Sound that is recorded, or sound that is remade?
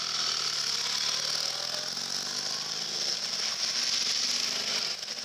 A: recorded